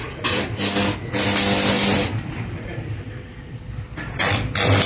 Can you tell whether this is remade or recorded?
recorded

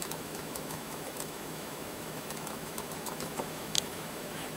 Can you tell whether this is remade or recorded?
remade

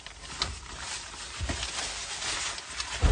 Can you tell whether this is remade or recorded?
recorded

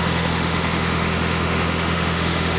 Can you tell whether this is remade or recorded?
remade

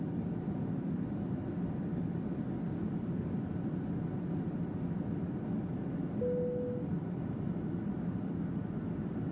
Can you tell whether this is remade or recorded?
recorded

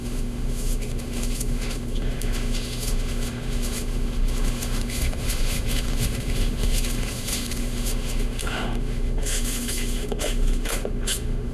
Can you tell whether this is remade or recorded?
remade